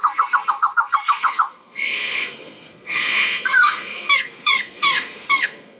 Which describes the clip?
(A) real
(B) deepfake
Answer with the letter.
B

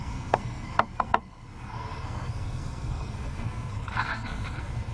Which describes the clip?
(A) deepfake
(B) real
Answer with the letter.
A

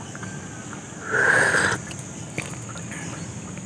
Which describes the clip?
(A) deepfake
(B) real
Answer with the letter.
B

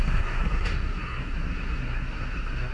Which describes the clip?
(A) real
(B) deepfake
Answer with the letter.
B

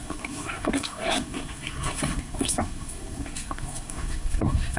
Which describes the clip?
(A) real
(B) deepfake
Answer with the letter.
B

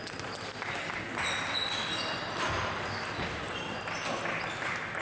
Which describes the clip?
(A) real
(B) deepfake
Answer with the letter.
A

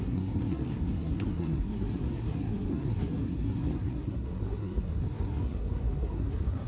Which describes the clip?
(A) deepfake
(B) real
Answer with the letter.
A